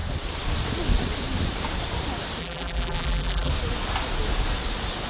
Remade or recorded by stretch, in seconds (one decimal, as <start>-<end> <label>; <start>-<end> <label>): 0.0-2.4 recorded; 2.4-3.5 remade; 3.5-5.1 recorded